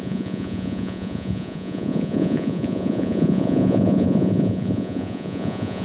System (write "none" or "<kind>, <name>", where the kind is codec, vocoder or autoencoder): vocoder, Vocos